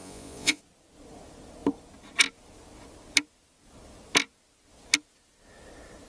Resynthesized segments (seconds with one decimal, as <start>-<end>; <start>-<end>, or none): 0.0-0.6